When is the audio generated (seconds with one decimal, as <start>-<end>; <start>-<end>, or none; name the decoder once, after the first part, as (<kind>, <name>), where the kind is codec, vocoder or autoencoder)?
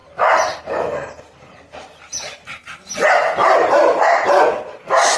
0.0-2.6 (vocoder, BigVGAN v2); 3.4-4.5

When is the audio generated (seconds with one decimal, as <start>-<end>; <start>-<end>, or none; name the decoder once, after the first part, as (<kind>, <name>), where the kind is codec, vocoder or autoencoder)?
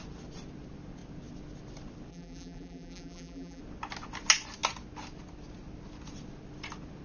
2.1-3.6 (vocoder, BigVGAN v2)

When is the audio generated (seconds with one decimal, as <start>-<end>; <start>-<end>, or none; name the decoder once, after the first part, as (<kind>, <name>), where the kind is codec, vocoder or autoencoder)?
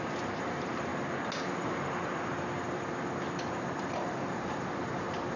0.0-0.9 (vocoder, BigVGAN v2); 3.8-5.4